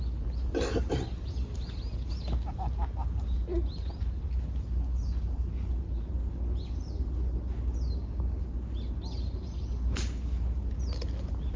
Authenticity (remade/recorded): recorded